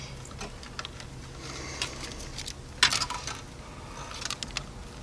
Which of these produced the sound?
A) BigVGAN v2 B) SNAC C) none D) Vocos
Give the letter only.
C